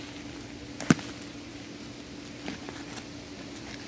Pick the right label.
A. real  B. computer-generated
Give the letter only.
A